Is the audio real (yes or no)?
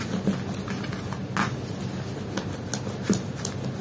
yes